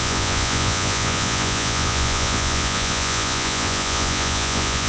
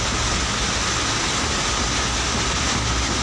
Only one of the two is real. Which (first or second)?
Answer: second